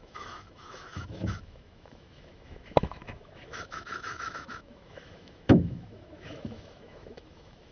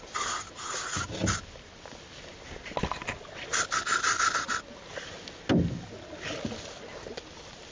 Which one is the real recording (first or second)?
second